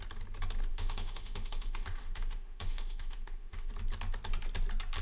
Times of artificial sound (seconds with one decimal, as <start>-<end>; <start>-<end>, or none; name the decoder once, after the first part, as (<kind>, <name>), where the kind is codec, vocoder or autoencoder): 0.7-3.7 (autoencoder, DAC-VAE)